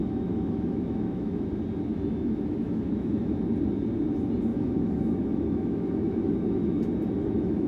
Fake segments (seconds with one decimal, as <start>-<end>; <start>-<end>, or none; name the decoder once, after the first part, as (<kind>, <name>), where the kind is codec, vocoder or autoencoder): 0.0-1.5 (autoencoder, DAC-VAE); 1.9-3.4; 4.5-6.8; 7.2-7.7